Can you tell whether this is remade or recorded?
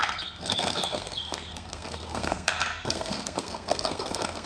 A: remade